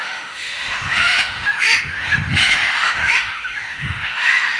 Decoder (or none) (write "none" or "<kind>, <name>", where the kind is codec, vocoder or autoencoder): autoencoder, DAC-VAE